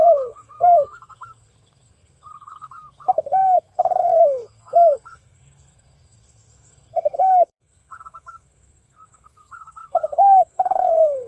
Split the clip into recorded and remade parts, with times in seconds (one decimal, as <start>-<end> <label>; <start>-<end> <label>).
0.0-11.3 remade